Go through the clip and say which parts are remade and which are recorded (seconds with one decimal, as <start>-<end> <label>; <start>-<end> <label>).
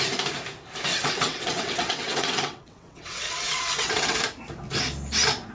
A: 0.0-0.9 recorded; 0.9-4.2 remade; 4.2-5.5 recorded